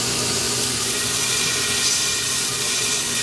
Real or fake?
fake